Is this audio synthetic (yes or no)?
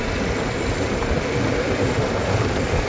yes